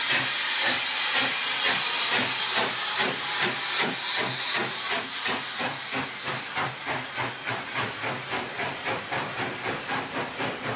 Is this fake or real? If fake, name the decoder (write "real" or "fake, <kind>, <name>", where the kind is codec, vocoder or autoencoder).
real